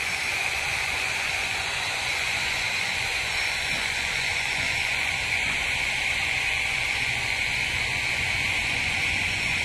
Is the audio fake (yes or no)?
yes